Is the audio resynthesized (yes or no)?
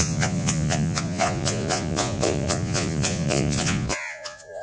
yes